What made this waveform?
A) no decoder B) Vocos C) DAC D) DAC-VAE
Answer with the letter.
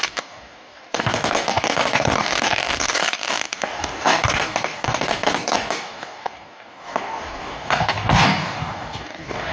C